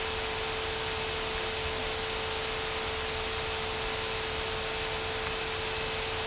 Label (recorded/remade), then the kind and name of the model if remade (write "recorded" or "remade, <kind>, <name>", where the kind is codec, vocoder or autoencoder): recorded